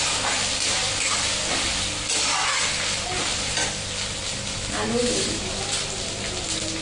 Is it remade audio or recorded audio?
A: recorded